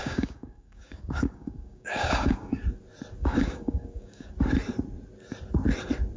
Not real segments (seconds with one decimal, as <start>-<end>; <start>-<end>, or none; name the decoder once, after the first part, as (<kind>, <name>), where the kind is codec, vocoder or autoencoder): 0.0-2.6 (codec, DAC); 3.2-4.3